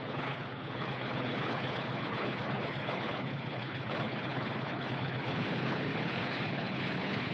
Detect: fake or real fake